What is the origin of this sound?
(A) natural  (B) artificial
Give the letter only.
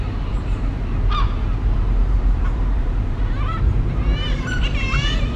B